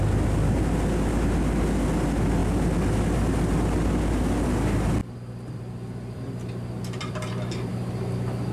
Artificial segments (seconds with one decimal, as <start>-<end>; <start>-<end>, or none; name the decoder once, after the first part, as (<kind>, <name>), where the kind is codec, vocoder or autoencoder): 5.0-7.7 (vocoder, BigVGAN v2)